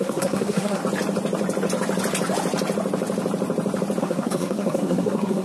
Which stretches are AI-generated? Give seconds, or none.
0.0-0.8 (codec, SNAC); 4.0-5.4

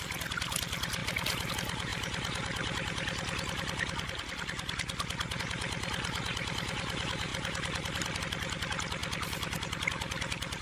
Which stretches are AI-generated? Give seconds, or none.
7.3-8.2 (vocoder, BigVGAN v2)

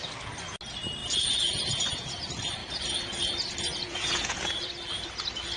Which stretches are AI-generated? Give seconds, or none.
1.0-2.1 (vocoder, Vocos); 3.7-4.7

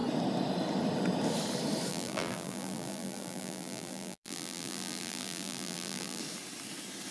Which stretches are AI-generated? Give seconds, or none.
1.9-6.2 (vocoder, BigVGAN v2)